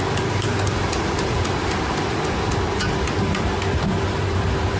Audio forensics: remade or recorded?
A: recorded